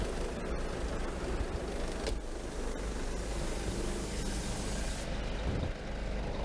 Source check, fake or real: real